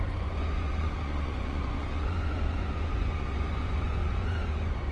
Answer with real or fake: fake